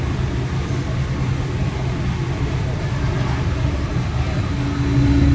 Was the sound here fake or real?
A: real